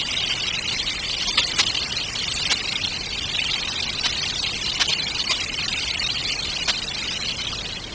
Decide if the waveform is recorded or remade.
recorded